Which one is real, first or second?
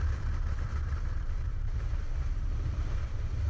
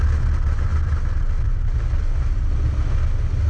second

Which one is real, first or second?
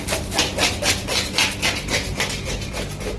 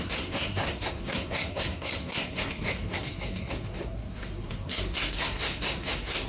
first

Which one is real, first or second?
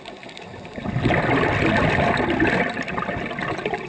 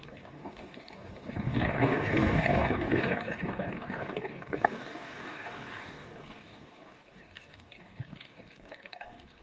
first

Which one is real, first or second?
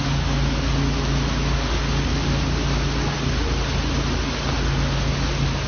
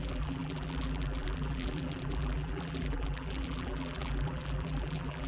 first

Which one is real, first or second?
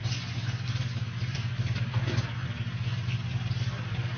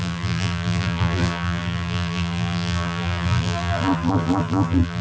first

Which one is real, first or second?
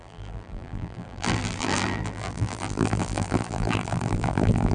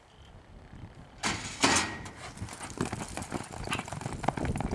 second